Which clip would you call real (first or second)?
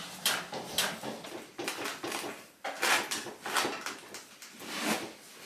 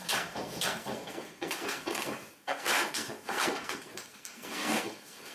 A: first